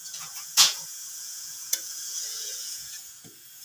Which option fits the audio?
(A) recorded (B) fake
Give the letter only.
B